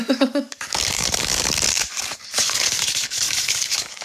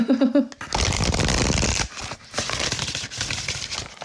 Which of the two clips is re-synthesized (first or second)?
first